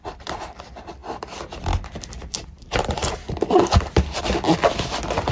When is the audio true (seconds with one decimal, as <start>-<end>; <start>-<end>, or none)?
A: none